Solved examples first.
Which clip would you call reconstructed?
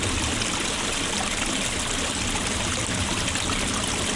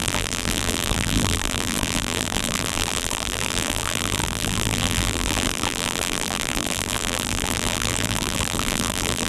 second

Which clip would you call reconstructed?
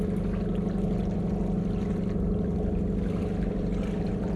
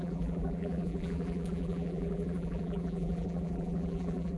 second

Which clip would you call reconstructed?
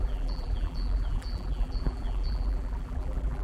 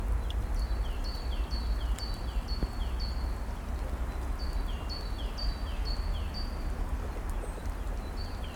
first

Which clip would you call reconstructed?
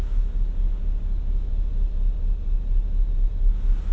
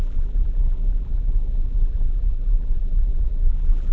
second